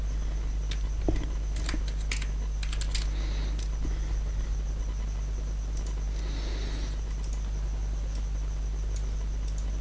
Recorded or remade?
recorded